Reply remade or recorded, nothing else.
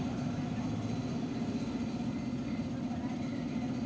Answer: recorded